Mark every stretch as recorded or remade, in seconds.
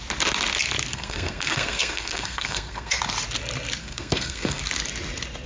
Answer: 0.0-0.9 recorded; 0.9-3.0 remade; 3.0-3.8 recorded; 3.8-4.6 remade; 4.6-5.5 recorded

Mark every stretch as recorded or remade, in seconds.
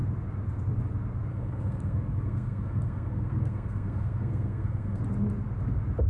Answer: 0.0-1.3 recorded; 1.3-5.0 remade; 5.0-6.1 recorded